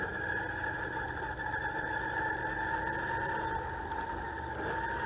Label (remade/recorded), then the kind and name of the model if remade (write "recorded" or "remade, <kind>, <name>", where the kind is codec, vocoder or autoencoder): recorded